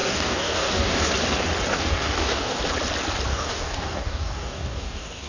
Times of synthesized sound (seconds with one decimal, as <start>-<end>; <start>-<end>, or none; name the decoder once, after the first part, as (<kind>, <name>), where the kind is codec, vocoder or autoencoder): 0.0-1.1 (codec, DAC); 1.7-2.6; 3.3-5.3